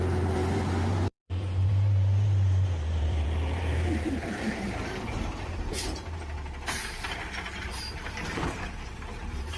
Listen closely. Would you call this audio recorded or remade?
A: remade